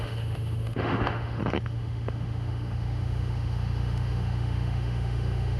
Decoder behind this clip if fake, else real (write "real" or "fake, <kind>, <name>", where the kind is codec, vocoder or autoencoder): fake, autoencoder, DAC-VAE